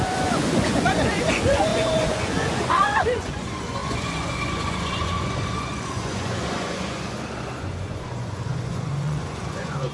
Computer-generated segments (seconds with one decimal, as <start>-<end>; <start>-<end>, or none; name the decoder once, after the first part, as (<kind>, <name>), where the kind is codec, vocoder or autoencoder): 0.0-9.9 (vocoder, Vocos)